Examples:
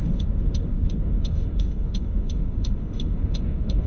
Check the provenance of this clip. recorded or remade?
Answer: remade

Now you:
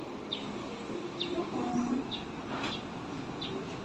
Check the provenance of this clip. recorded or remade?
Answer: recorded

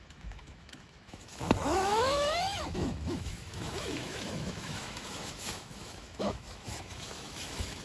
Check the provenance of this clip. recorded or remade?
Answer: remade